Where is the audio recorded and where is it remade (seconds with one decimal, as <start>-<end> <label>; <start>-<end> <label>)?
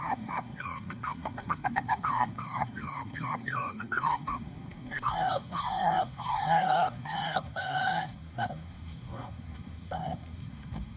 0.0-11.0 remade